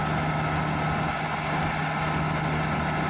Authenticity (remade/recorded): recorded